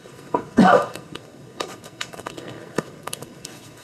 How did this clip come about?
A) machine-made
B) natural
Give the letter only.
A